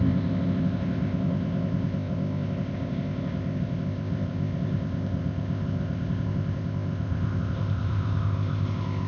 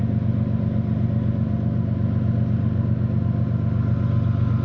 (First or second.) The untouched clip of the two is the second